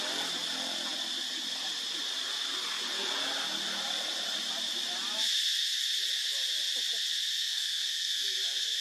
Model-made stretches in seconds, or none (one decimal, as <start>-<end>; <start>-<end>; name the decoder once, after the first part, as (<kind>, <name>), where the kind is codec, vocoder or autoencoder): 7.4-8.8 (codec, SNAC)